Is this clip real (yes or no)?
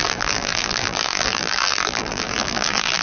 no